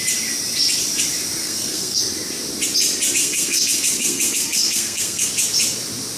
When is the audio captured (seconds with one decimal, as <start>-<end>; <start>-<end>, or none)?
0.0-1.4; 2.0-3.2; 5.3-6.2